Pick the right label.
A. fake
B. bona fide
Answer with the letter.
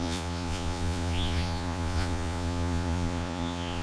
A